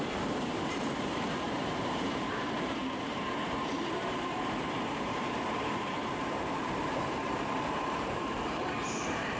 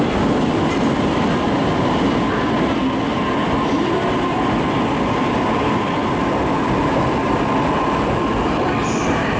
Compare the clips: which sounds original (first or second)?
second